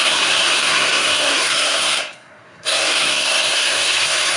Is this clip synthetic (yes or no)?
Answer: yes